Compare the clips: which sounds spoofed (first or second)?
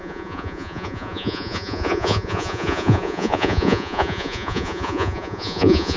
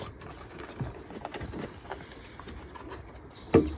first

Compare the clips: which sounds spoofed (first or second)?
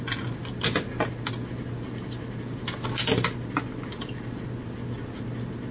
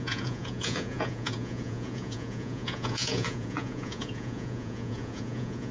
second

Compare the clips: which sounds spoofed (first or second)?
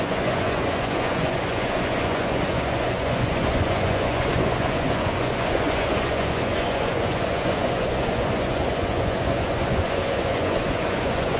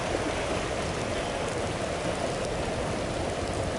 first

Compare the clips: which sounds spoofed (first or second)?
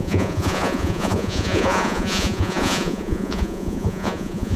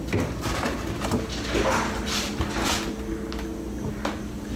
first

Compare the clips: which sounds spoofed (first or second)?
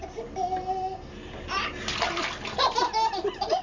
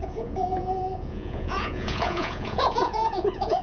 second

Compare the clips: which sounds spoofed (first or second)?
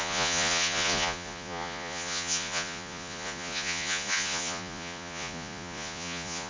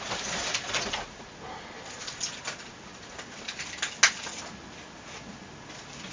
first